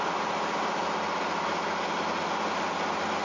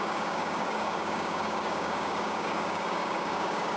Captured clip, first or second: first